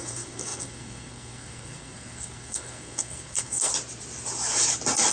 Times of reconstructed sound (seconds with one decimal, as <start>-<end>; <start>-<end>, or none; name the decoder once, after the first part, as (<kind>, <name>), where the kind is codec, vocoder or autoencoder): 0.0-3.7 (codec, SNAC)